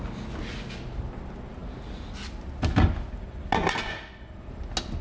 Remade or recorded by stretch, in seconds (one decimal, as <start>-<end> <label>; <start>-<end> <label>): 0.0-5.0 recorded